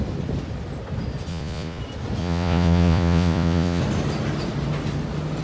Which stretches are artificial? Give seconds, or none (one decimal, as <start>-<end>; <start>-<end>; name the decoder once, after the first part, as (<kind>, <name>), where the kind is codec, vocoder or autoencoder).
1.3-1.8 (vocoder, Vocos); 2.2-3.8